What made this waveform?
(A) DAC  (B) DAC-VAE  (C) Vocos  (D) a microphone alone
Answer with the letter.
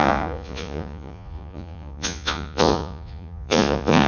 C